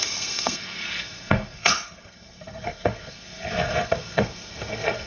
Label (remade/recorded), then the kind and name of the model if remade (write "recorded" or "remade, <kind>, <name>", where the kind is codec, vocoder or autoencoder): remade, codec, SNAC